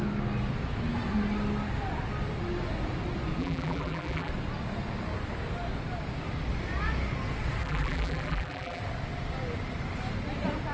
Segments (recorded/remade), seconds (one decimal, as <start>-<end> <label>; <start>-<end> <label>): 0.0-3.4 recorded; 3.4-4.3 remade; 4.3-7.6 recorded; 7.6-8.8 remade; 8.8-10.7 recorded